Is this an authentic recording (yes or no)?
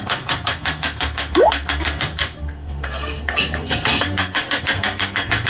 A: no